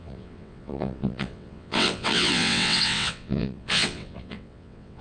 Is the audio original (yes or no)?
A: no